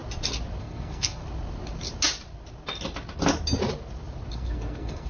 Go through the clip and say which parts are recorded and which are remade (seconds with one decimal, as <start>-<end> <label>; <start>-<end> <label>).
0.0-0.6 recorded; 0.6-1.2 remade; 1.2-4.3 recorded; 4.3-5.1 remade